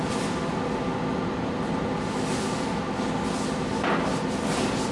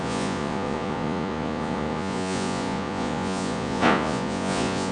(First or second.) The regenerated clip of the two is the second